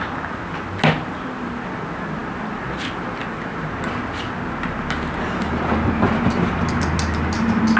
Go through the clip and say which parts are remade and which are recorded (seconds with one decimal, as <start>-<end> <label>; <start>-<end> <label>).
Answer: 0.0-7.8 recorded